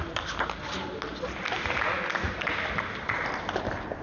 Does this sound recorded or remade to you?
recorded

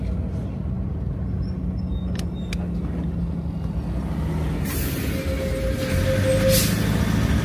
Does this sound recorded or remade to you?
recorded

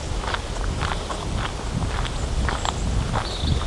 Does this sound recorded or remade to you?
recorded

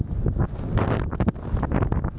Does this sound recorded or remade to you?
recorded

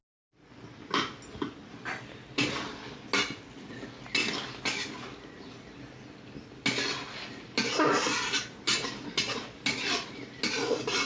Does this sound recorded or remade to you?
recorded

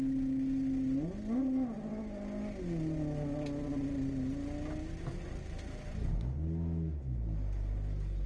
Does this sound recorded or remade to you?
recorded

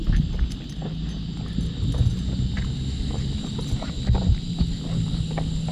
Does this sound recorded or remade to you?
recorded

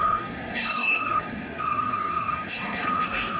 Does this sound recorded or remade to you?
remade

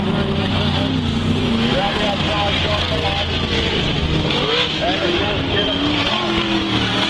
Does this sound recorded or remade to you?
recorded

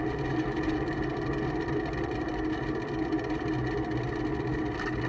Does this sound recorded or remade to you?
recorded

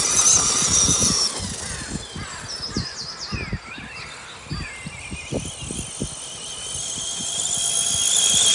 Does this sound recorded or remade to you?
recorded